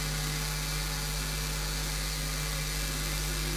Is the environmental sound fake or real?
fake